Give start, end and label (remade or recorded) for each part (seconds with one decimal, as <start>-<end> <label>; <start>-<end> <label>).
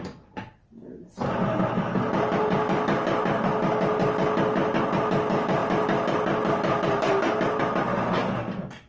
0.0-8.9 recorded